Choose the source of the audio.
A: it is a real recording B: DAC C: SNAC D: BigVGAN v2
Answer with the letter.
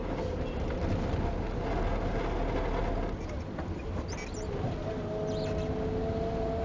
A